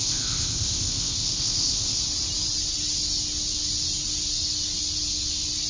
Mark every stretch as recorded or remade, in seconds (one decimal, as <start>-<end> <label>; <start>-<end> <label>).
0.0-2.0 remade; 2.0-5.7 recorded